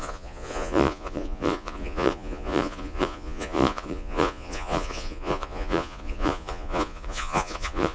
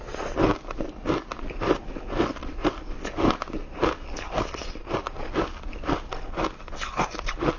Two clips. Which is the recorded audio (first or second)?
second